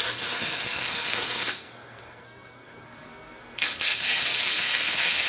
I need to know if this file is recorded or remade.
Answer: remade